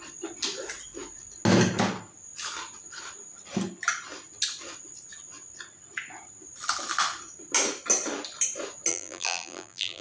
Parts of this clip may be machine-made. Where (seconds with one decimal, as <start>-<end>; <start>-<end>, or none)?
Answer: 8.9-10.0